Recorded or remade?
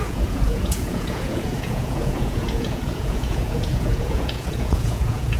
remade